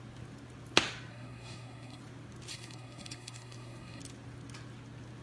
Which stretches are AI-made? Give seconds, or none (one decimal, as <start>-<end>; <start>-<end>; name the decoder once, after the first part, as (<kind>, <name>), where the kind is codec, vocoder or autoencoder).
1.1-2.0 (codec, SNAC); 2.5-4.0